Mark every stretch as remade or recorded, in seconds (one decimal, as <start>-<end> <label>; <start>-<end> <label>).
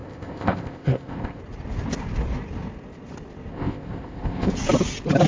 0.0-1.4 remade; 1.4-3.5 recorded; 3.5-4.5 remade; 4.5-5.3 recorded